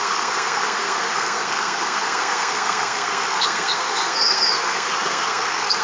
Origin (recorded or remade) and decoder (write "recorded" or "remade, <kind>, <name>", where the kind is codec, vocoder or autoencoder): remade, codec, SNAC